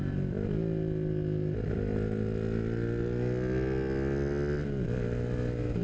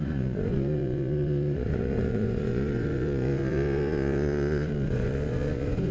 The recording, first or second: first